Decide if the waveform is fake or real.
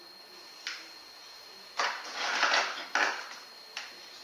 real